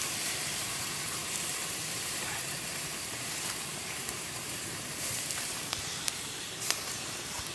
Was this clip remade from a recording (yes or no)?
yes